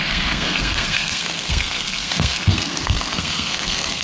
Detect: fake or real fake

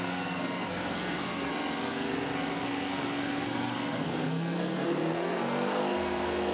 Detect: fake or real fake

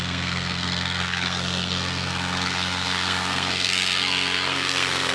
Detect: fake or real fake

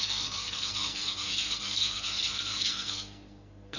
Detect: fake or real fake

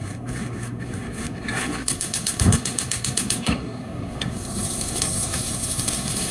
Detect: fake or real fake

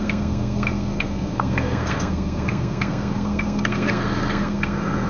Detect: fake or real fake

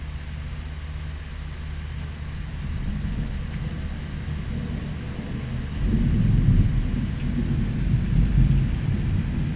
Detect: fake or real real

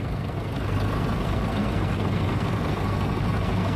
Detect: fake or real fake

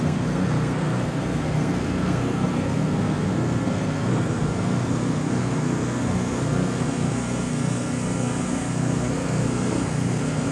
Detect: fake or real fake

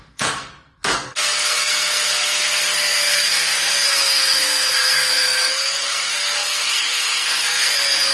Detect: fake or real fake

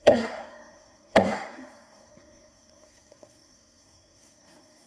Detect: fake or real fake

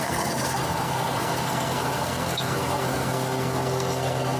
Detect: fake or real fake